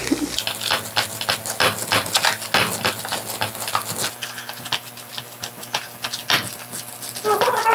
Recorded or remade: recorded